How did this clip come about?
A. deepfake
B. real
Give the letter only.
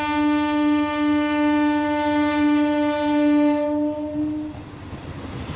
B